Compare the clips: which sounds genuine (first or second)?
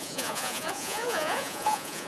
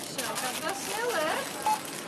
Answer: second